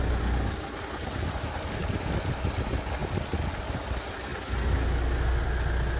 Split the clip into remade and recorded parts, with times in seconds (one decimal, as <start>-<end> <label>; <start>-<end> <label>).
0.0-1.0 recorded; 1.0-1.7 remade; 1.7-6.0 recorded